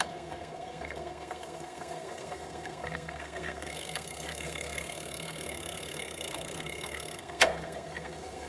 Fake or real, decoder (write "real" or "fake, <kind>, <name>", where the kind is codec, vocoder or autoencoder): fake, codec, SNAC